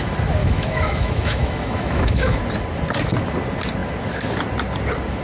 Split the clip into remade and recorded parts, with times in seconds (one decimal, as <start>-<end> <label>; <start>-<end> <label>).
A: 0.0-0.4 recorded; 0.4-2.4 remade; 2.4-5.2 recorded